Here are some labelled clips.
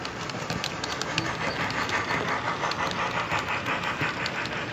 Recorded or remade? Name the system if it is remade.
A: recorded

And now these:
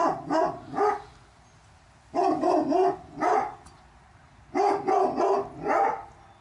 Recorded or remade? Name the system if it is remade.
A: recorded